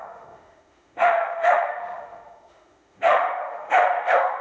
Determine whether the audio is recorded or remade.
remade